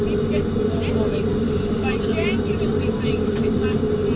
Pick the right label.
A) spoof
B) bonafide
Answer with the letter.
B